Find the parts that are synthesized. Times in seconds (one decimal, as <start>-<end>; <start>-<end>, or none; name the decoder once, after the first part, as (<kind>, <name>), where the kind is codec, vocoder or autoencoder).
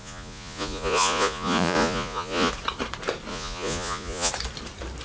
0.0-2.5 (vocoder, Vocos); 3.3-4.3